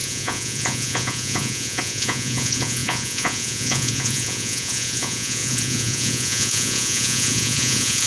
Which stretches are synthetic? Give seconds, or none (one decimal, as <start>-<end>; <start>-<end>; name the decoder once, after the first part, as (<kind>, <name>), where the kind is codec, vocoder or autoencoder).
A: 0.0-8.1 (vocoder, Vocos)